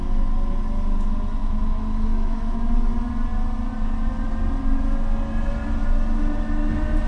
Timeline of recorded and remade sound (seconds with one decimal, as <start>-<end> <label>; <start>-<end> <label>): 0.0-1.4 recorded; 1.4-2.6 remade; 2.6-7.1 recorded